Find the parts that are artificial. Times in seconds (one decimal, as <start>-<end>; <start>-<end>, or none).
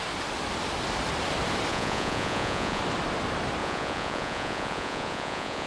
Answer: 1.7-2.8; 3.6-5.7